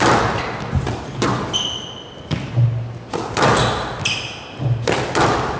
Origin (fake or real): real